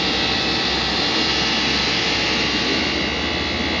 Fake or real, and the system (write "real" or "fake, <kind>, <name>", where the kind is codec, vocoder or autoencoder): real